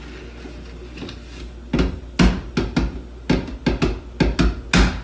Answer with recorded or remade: recorded